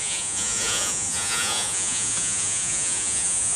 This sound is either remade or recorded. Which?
remade